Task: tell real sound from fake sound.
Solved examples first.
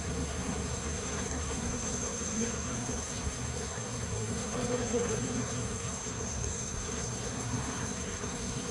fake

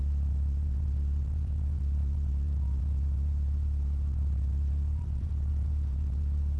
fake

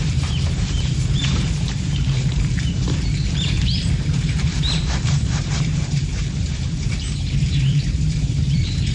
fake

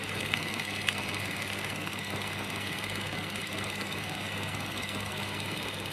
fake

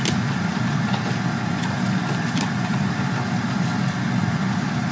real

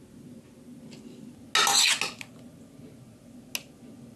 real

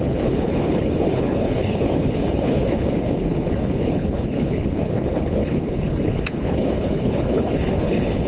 fake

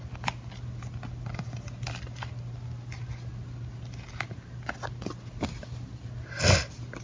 real